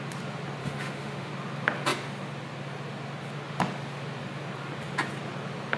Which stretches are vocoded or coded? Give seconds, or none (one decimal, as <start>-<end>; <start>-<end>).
0.6-1.3